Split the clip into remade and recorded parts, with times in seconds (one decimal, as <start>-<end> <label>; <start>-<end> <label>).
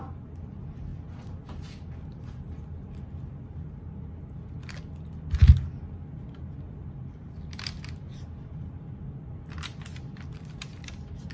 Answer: 0.0-11.3 recorded